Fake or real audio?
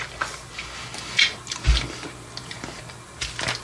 real